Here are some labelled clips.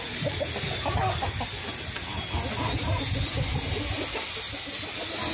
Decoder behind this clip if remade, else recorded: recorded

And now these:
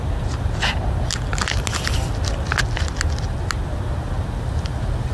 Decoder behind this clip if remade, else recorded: recorded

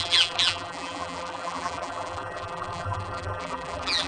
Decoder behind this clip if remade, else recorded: remade, vocoder, BigVGAN v2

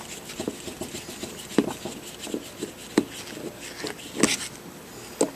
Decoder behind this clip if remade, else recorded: recorded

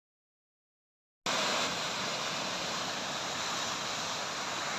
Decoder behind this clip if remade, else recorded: recorded